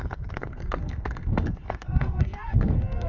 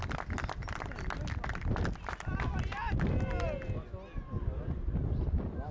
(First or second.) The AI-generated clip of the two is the first